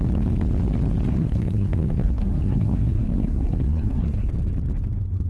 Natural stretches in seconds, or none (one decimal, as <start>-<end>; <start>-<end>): 0.0-1.1; 4.3-5.3